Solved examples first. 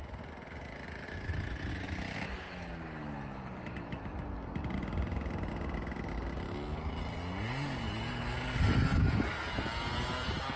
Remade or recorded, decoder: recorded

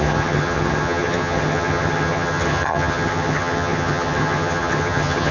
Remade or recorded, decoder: remade, vocoder, HiFi-GAN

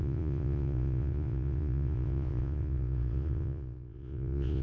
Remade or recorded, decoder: remade, vocoder, Vocos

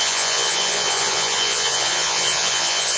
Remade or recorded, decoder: remade, vocoder, Vocos